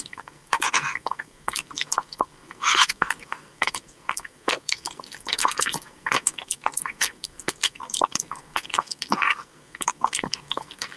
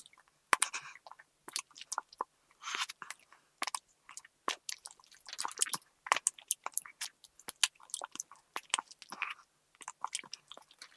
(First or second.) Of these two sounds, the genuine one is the second